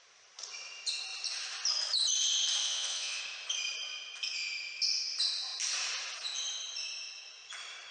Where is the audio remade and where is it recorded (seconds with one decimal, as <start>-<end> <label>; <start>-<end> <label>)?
0.0-2.6 recorded; 2.6-3.2 remade; 3.2-7.9 recorded